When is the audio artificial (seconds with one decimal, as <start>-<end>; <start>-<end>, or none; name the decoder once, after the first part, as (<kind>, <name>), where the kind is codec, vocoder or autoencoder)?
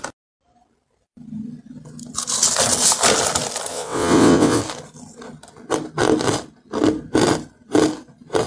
3.7-4.6 (vocoder, WaveNeXt)